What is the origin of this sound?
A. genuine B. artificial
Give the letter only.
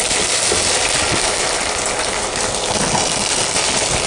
A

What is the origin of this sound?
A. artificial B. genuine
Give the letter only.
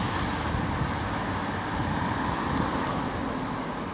B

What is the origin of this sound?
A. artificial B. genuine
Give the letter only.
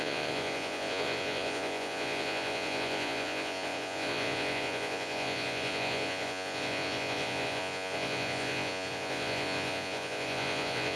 A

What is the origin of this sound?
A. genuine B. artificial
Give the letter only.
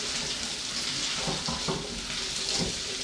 A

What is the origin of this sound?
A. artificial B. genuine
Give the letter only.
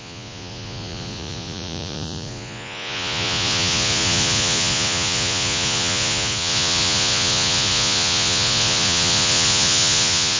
A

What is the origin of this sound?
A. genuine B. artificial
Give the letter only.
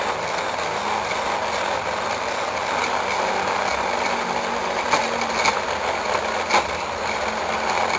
A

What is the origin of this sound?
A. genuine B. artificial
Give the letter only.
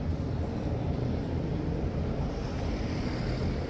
A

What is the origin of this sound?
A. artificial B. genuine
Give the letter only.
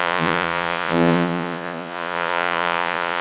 A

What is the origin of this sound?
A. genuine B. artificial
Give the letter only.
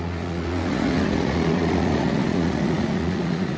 B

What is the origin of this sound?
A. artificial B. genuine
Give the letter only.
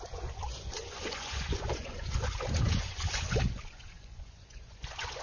A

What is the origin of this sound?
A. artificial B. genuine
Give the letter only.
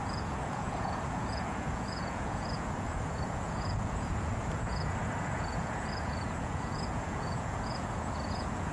A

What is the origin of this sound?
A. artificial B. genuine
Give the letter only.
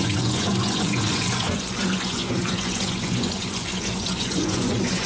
A